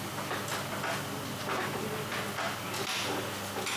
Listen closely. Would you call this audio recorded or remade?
recorded